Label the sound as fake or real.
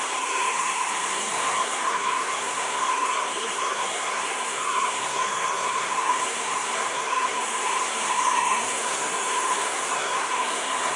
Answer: fake